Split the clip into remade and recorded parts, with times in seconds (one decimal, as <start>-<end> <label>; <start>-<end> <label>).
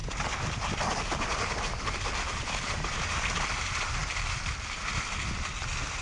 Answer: 0.0-6.0 recorded